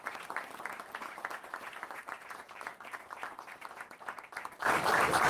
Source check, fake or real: fake